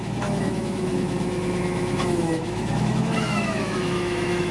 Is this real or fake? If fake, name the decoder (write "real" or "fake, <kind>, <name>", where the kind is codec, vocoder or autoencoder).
fake, autoencoder, DAC-VAE